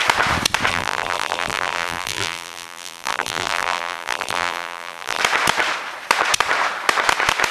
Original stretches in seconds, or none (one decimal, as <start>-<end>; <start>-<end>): 0.0-0.7; 5.2-7.5